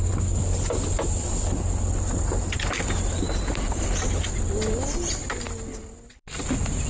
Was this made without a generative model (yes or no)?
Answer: yes